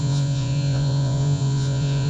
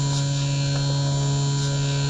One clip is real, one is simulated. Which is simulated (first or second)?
first